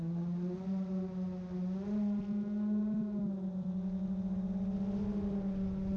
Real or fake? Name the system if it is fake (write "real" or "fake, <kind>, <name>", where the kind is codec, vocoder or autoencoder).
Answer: real